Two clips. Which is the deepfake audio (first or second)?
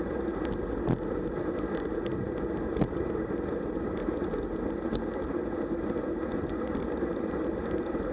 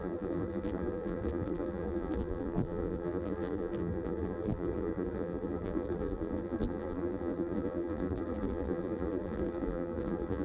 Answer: second